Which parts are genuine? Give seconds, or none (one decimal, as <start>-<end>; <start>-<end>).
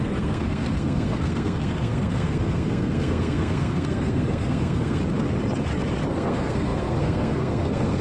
5.0-6.1